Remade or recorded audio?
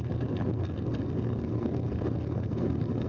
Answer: remade